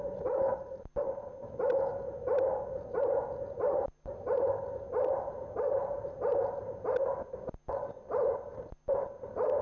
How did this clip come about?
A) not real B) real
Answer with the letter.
B